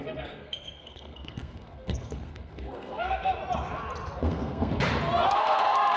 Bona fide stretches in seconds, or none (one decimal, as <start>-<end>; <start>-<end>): 3.4-4.2; 4.7-5.3